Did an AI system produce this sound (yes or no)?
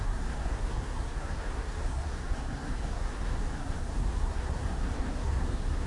yes